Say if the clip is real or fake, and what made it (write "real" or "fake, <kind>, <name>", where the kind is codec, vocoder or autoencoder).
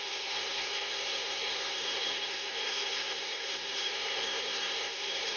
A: fake, codec, SNAC